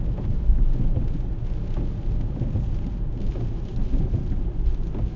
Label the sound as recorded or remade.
recorded